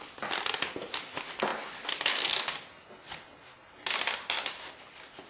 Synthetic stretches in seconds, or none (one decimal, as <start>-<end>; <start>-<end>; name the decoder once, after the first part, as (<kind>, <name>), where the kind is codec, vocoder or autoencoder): none